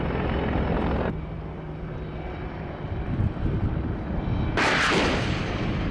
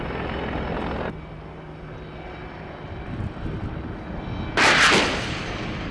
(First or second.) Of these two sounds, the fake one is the first